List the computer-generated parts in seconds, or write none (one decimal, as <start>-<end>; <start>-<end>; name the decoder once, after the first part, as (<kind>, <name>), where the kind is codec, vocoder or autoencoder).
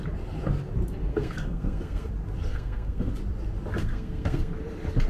1.1-2.1 (codec, SNAC); 2.5-3.1; 3.8-4.5